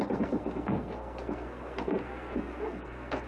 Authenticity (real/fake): fake